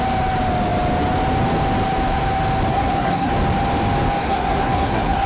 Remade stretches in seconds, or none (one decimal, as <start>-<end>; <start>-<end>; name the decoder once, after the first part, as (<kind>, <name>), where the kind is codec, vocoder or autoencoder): 2.7-3.3 (codec, SNAC); 4.2-5.3